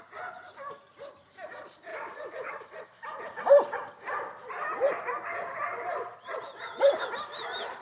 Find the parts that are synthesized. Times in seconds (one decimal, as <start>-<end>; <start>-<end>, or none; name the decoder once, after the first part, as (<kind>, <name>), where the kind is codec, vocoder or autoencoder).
none